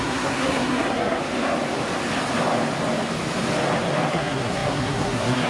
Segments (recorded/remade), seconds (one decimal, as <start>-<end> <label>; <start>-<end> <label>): 0.0-1.2 remade; 1.2-4.1 recorded; 4.1-5.5 remade